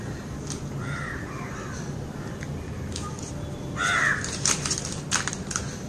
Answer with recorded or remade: remade